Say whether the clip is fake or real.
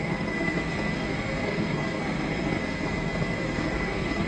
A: fake